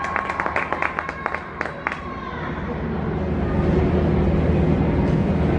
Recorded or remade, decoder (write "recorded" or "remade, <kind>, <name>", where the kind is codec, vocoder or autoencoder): recorded